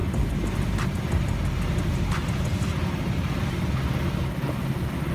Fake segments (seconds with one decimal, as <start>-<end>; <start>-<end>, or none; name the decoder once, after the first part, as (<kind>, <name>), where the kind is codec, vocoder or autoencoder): none

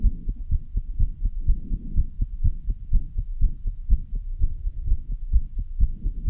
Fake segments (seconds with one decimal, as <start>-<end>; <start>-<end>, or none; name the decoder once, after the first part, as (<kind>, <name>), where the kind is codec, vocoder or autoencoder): 4.3-5.0 (codec, SNAC)

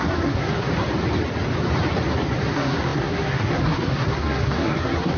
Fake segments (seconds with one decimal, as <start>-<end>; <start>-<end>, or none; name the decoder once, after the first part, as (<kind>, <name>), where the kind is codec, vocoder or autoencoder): 0.0-0.7 (codec, SNAC); 2.4-5.2

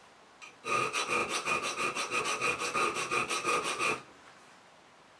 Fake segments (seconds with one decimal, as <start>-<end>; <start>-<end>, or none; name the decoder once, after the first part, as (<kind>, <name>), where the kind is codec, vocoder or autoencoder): none